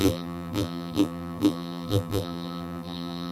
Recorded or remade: remade